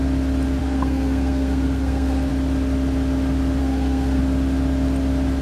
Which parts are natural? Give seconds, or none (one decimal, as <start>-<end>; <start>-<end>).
0.0-0.6; 2.3-3.6; 4.2-5.4